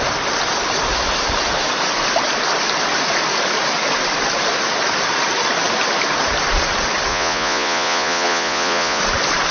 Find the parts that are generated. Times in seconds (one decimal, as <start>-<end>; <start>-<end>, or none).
7.1-9.0

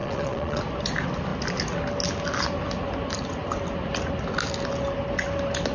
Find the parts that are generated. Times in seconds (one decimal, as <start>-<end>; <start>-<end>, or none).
0.0-0.6